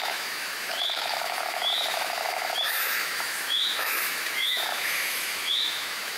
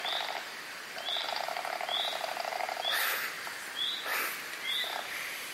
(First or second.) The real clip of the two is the second